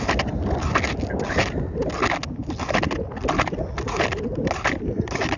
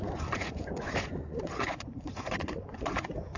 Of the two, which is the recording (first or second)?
first